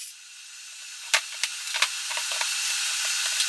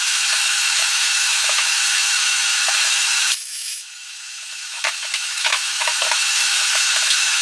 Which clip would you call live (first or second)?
first